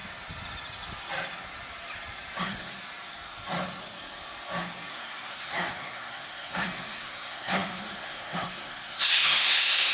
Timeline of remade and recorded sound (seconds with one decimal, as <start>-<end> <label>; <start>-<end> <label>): 0.0-2.4 recorded; 2.4-2.8 remade; 2.8-4.9 recorded; 4.9-9.9 remade